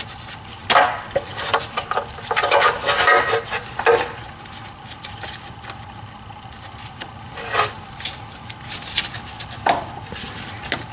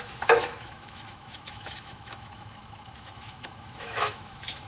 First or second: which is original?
first